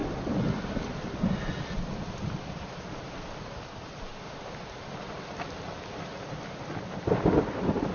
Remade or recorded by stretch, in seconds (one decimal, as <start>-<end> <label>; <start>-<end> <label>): 0.0-7.9 recorded